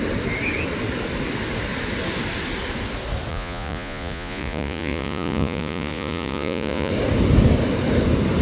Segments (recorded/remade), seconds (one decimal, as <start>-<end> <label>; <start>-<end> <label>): 0.0-3.3 recorded; 3.3-6.9 remade; 6.9-8.4 recorded

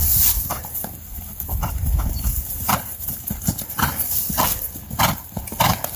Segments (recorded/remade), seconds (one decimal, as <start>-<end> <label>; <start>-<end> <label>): 0.0-3.6 remade; 3.6-6.0 recorded

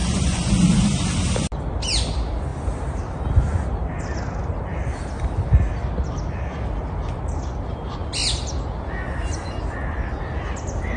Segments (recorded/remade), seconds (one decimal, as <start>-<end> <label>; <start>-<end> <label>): 0.0-0.5 remade; 0.5-11.0 recorded

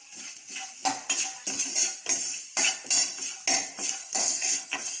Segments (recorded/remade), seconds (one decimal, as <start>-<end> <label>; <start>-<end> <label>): 0.0-4.0 recorded; 4.0-5.0 remade

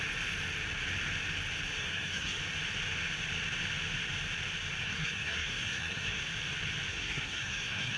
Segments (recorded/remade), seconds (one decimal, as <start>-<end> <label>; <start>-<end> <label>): 0.0-1.8 recorded; 1.8-2.4 remade; 2.4-4.8 recorded; 4.8-6.2 remade; 6.2-6.9 recorded; 6.9-8.0 remade

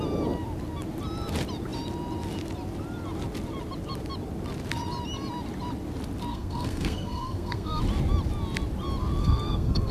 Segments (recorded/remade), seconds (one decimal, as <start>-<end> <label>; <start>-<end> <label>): 0.0-6.3 recorded; 6.3-7.8 remade; 7.8-9.2 recorded; 9.2-9.9 remade